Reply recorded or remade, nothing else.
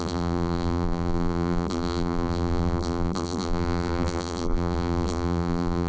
remade